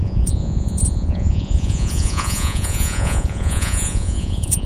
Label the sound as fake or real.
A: fake